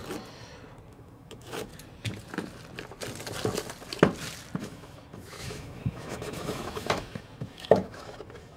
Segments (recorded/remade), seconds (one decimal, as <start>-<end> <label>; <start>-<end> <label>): 0.0-0.9 recorded; 0.9-1.7 remade; 1.7-4.6 recorded; 4.6-8.6 remade